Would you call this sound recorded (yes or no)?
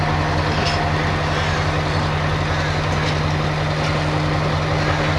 yes